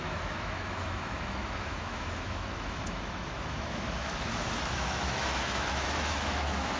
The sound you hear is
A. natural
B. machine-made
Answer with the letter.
B